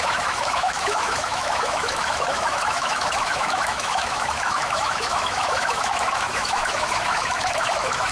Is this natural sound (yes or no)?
no